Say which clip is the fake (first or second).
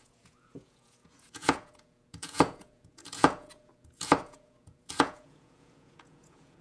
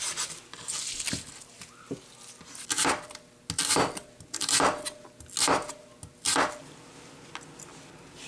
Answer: first